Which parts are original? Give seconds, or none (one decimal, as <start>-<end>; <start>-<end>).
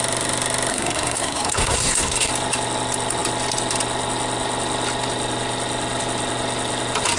0.0-0.7; 2.3-7.2